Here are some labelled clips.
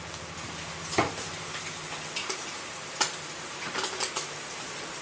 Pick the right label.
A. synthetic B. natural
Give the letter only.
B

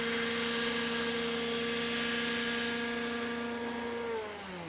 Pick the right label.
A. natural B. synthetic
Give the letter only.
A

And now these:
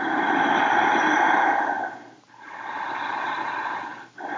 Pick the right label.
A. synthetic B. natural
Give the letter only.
B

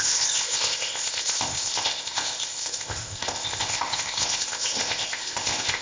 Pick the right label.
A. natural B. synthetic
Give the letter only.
B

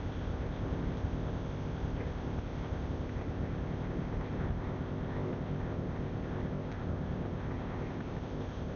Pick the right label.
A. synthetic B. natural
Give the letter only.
A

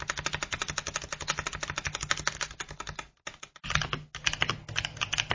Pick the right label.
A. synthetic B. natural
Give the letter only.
B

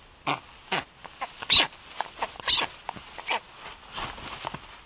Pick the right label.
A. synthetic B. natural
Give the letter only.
B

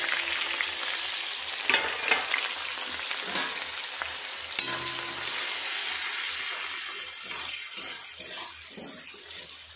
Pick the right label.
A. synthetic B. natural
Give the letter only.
B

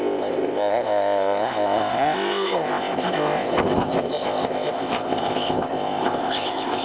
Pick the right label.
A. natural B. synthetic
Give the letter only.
B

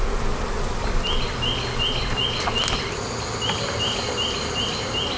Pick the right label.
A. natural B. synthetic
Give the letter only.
A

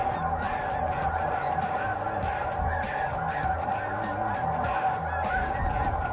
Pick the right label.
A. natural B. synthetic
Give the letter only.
A